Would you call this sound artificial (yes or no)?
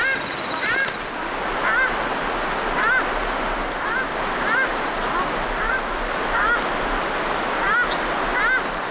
no